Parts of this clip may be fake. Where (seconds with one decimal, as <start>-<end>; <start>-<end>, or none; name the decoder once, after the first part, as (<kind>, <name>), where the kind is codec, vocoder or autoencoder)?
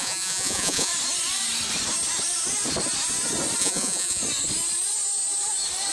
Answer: 0.0-0.9 (vocoder, Vocos); 3.6-4.2